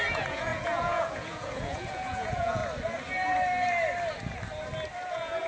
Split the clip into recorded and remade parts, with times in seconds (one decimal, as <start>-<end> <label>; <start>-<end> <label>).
0.0-2.6 remade; 2.6-5.1 recorded; 5.1-5.5 remade

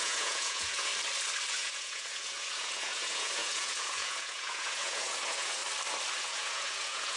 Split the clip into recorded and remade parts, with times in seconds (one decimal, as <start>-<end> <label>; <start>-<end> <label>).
0.0-0.9 remade; 0.9-1.5 recorded; 1.5-5.6 remade; 5.6-6.2 recorded; 6.2-7.2 remade

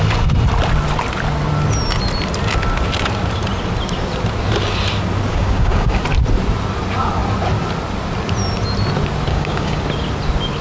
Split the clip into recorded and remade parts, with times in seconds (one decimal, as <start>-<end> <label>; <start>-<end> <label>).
0.0-5.3 recorded; 5.3-6.0 remade; 6.0-9.3 recorded; 9.3-9.8 remade; 9.8-10.6 recorded

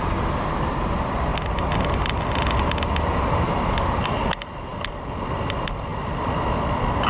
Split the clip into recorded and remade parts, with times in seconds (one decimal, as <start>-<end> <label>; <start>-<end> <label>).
0.0-7.1 recorded